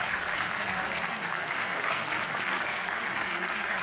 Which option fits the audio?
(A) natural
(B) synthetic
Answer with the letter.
B